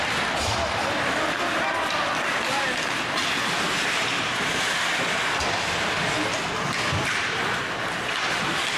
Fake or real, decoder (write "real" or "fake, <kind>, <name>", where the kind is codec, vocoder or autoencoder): real